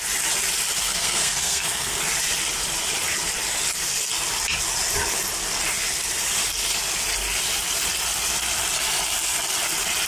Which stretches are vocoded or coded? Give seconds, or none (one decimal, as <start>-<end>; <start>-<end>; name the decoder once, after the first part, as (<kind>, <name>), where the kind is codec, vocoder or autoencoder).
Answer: 0.8-2.0 (codec, SNAC)